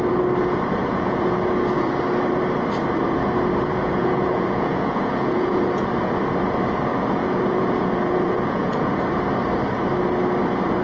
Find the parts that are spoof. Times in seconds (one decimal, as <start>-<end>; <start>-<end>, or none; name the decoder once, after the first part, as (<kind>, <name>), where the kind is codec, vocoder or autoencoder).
0.9-1.5 (vocoder, Vocos); 3.7-5.8; 6.9-8.9